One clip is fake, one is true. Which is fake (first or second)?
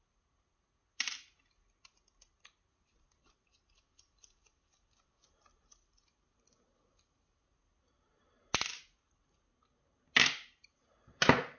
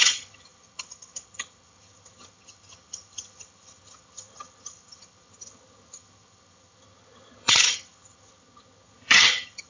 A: second